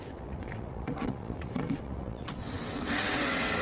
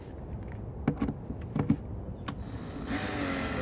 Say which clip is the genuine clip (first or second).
second